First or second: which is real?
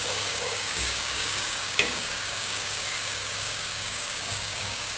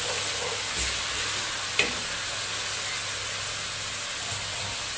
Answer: second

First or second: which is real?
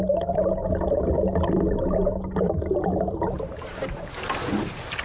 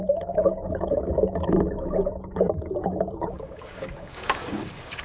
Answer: first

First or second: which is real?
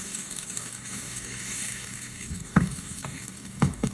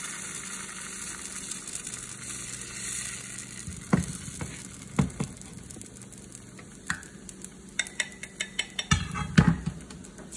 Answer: second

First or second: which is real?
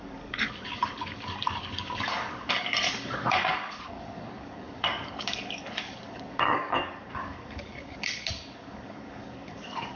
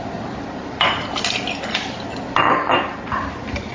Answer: second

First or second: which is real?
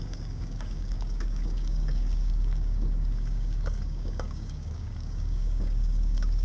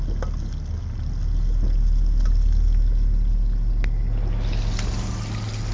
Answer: second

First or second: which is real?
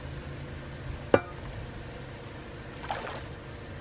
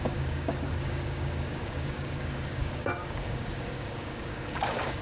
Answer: first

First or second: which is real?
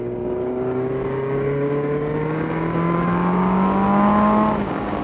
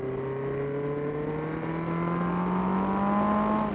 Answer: second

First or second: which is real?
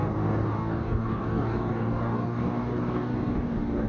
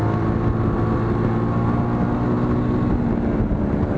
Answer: second